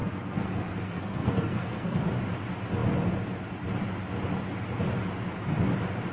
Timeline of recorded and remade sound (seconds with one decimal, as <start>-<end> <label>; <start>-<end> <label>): 0.0-2.1 remade; 2.1-6.1 recorded